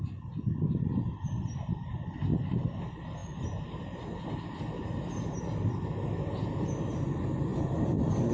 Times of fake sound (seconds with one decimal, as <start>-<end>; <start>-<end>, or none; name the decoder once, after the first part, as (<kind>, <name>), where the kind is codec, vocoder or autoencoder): none